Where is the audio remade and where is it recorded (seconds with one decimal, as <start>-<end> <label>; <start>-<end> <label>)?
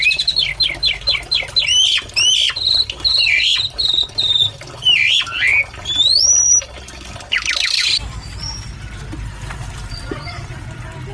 0.0-11.1 remade